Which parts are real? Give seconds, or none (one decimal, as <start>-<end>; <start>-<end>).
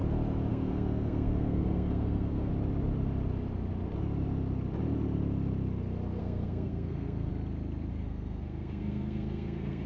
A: 0.0-0.5; 2.5-6.2; 7.3-7.9